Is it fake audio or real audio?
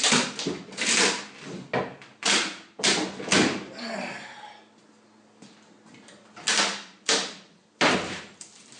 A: real